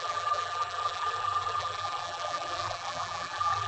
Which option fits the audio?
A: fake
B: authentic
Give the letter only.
A